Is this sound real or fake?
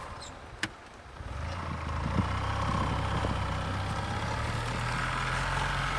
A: real